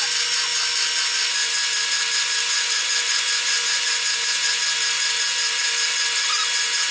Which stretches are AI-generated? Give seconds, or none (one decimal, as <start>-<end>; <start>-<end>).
2.5-4.6